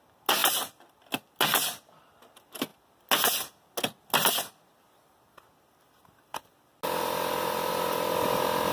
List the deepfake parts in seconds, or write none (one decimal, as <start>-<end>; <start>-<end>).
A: none